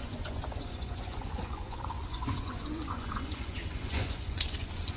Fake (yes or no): yes